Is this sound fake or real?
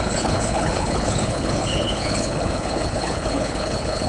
fake